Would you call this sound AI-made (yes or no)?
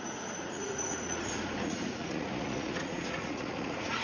yes